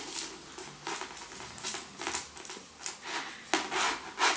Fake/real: real